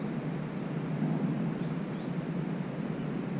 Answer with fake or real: real